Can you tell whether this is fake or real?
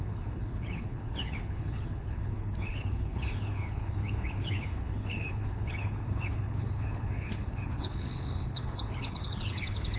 fake